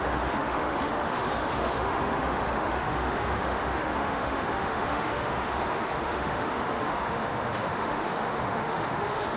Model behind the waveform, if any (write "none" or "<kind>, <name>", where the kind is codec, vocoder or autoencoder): autoencoder, DAC-VAE